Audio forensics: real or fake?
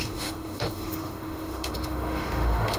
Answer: fake